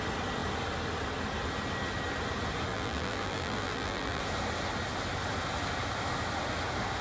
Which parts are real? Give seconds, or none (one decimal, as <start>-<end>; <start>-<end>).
0.0-2.7; 4.2-7.0